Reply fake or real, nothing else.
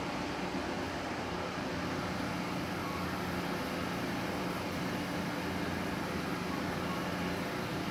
real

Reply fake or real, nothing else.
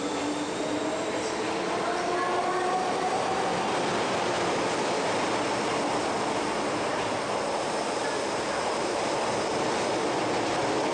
real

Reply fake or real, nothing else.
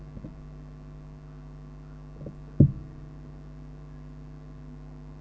real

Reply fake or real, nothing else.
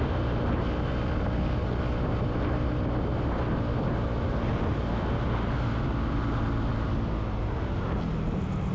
real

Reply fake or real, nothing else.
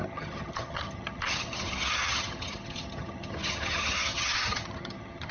fake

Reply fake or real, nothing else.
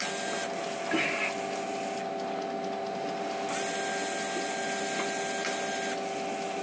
real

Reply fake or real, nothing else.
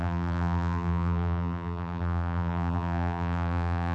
fake